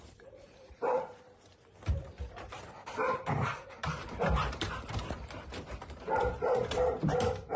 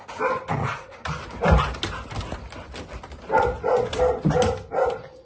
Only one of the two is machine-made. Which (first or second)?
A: first